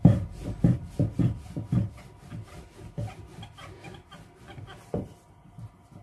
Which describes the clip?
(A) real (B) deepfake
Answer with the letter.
A